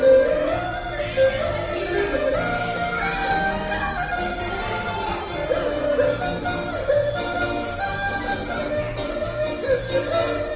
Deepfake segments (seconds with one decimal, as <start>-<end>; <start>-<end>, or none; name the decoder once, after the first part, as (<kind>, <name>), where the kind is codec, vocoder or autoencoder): none